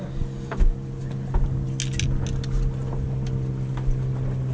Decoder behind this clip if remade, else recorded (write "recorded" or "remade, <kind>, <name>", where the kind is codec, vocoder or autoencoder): recorded